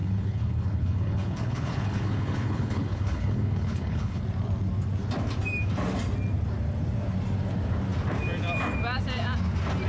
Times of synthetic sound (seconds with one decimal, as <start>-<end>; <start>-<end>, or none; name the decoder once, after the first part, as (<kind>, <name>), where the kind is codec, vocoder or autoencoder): 0.0-4.2 (codec, HILCodec)